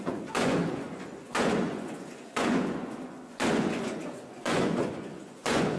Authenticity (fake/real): fake